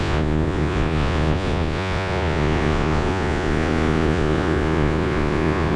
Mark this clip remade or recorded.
remade